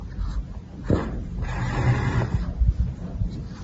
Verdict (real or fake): fake